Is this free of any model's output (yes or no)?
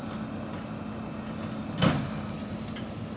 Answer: yes